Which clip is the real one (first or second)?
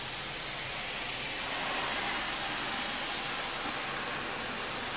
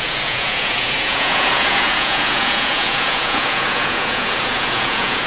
first